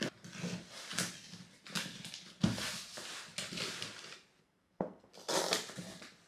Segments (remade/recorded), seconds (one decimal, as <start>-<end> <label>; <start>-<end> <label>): 0.0-4.4 recorded; 4.4-5.1 remade; 5.1-6.3 recorded